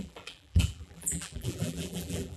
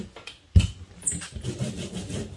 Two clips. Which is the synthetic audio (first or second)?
first